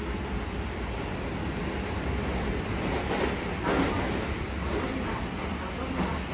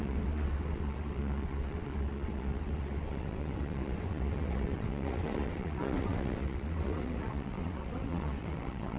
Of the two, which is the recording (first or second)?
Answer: first